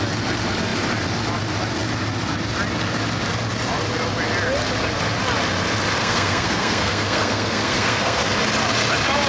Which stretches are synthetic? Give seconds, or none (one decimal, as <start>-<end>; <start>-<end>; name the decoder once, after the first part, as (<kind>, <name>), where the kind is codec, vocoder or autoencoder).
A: 6.0-8.3 (codec, SNAC)